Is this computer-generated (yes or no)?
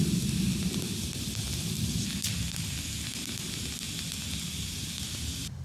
no